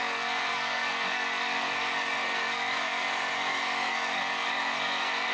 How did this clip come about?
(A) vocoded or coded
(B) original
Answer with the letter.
A